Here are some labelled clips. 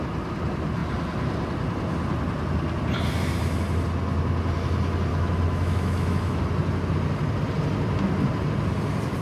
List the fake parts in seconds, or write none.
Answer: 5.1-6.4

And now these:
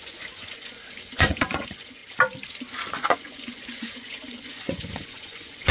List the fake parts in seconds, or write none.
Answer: 0.0-2.0; 2.9-5.7

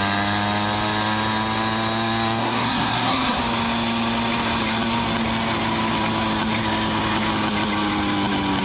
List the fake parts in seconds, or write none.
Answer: 2.4-3.4